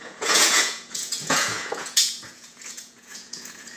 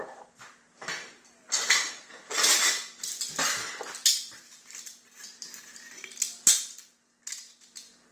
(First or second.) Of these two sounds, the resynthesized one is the first